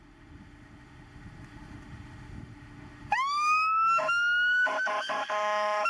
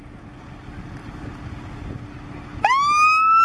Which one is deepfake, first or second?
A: first